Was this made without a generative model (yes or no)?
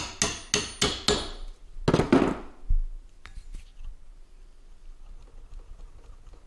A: yes